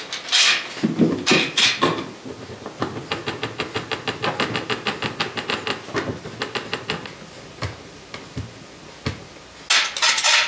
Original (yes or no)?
yes